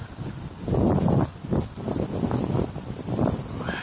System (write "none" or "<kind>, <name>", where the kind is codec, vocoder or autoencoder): none